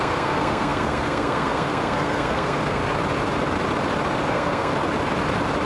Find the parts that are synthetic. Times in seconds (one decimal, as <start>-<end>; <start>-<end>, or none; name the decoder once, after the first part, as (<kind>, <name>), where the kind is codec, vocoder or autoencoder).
0.0-2.8 (codec, SNAC); 4.3-4.7